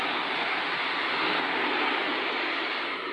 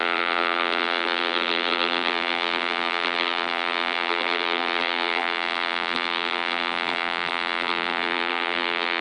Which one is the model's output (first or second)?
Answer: second